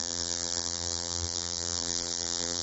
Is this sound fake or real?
fake